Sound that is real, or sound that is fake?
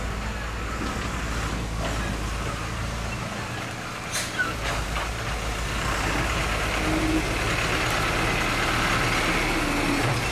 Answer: real